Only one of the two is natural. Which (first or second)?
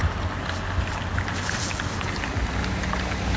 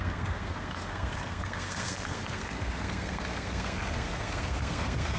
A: first